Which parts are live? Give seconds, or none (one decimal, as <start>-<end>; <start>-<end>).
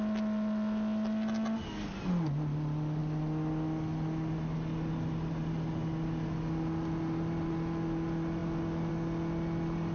0.0-9.9